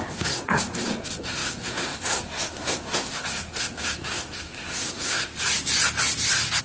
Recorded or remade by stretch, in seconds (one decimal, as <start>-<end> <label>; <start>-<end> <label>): 0.0-5.3 remade; 5.3-6.6 recorded